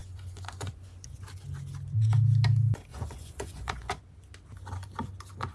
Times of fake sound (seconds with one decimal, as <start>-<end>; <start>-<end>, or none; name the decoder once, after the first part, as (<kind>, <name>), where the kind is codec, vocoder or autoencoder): 0.0-1.0 (vocoder, Vocos); 2.9-3.9